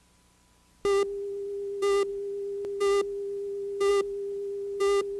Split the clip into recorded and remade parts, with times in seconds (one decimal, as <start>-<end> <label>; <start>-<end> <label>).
0.0-5.2 recorded